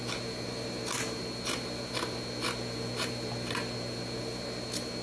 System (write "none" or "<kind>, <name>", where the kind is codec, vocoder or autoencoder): none